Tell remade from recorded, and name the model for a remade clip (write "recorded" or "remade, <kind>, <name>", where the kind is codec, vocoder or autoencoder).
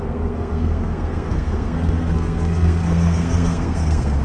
remade, codec, SNAC